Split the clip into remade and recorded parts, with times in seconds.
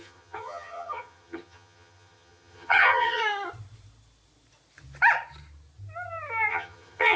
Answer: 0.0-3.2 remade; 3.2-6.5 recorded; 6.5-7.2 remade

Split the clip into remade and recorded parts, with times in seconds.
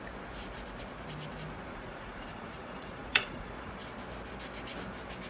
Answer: 0.0-1.7 recorded; 1.7-3.7 remade; 3.7-5.3 recorded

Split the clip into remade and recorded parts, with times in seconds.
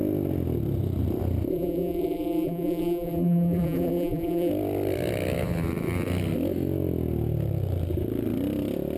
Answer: 0.0-1.5 recorded; 1.5-4.5 remade; 4.5-9.0 recorded